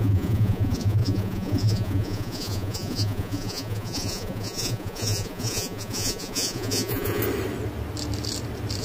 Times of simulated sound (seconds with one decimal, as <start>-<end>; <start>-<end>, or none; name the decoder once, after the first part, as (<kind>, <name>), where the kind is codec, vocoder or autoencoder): 0.0-7.2 (vocoder, Vocos)